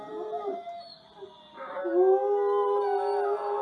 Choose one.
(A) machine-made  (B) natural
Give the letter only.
B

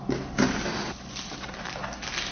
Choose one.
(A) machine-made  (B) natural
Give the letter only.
B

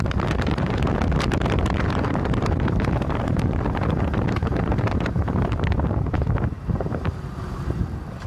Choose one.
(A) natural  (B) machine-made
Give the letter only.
B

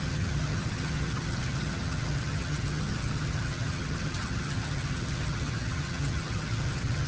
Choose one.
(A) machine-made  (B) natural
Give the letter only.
A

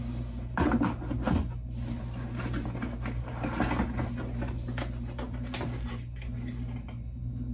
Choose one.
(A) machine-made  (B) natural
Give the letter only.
B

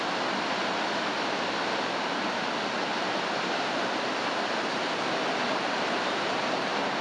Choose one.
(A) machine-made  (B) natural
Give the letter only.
B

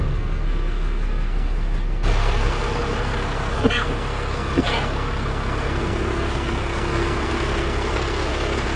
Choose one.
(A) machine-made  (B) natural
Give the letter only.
A